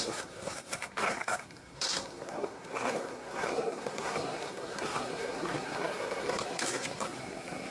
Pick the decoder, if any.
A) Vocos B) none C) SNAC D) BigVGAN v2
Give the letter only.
C